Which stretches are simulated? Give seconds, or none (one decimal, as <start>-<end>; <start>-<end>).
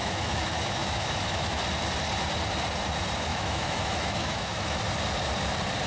0.0-1.6; 3.3-4.8